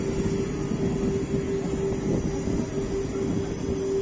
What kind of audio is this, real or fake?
real